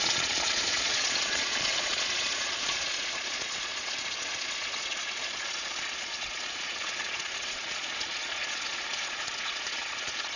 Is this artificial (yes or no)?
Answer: yes